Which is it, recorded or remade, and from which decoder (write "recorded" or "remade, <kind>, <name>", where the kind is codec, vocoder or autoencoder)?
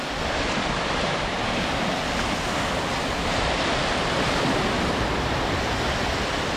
recorded